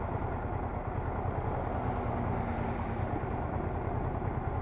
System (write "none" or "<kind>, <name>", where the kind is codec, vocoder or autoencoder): none